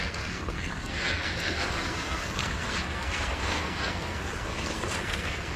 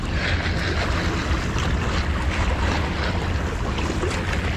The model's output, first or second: first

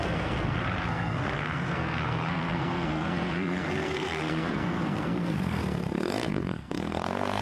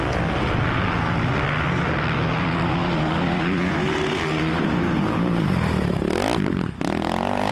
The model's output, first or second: first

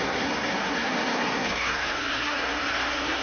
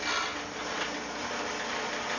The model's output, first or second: first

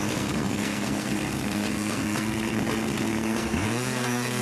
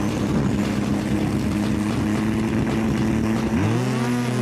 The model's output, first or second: first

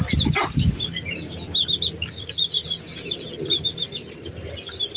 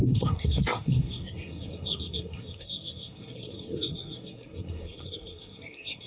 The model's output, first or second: second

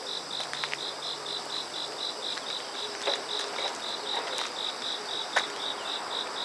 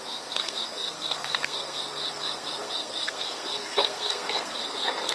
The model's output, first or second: second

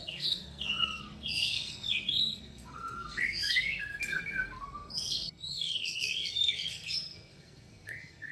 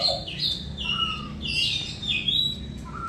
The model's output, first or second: first